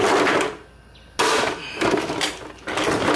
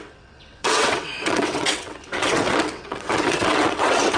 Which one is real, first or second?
first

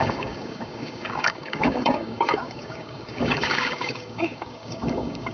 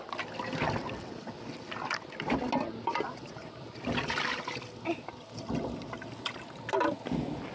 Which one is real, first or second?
second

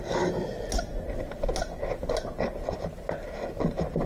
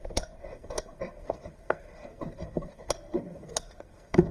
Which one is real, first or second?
first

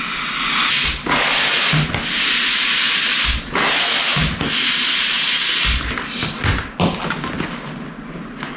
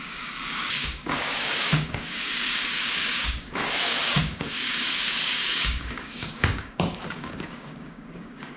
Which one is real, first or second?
first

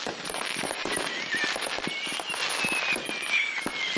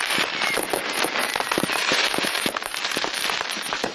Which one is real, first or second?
first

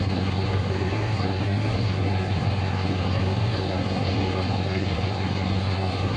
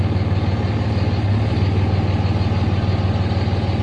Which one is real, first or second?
second